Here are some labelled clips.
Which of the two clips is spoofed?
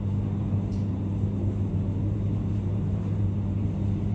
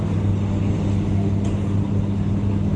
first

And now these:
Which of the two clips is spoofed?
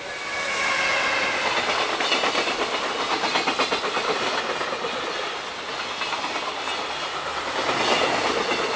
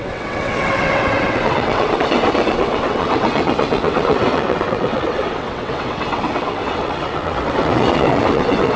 second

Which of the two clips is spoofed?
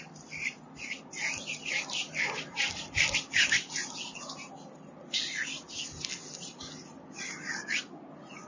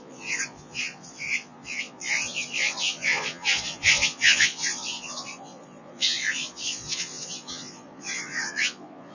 second